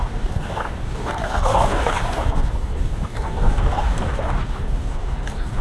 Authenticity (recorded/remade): remade